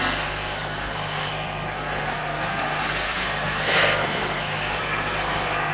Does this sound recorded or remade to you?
remade